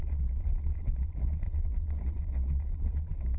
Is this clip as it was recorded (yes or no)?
no